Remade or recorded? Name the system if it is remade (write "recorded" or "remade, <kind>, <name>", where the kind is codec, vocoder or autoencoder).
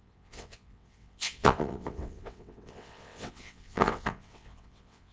remade, vocoder, WaveNeXt